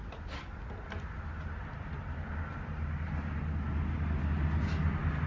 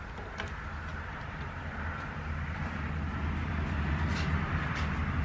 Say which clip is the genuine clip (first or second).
first